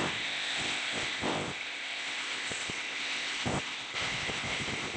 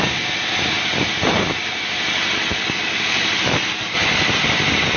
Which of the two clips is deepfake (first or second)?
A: first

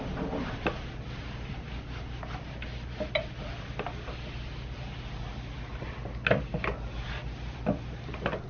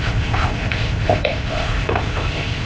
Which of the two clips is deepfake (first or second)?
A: second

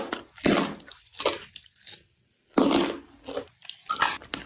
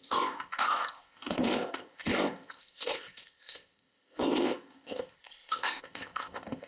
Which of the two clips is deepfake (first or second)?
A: second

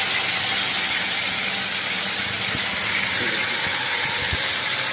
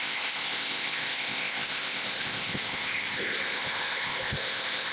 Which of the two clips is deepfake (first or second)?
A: second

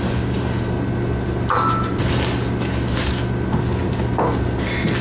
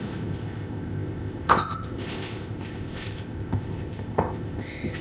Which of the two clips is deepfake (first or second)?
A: second